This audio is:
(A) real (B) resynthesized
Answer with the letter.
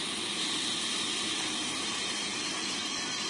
A